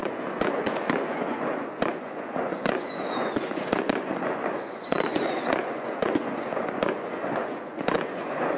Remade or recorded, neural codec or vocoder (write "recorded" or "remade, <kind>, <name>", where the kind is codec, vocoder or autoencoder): remade, vocoder, Vocos